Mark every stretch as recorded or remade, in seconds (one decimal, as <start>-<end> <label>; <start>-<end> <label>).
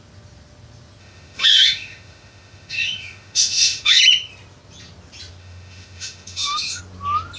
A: 0.0-1.0 recorded; 1.0-4.0 remade; 4.0-5.4 recorded; 5.4-6.8 remade; 6.8-7.4 recorded